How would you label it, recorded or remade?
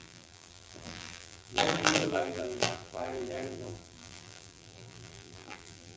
remade